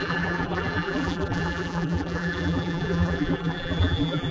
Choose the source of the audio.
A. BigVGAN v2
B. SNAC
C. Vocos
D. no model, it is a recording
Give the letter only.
A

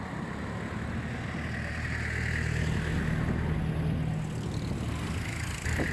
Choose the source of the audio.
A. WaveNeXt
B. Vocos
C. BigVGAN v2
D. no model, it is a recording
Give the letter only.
D